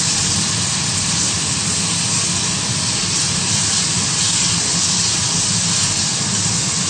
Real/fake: real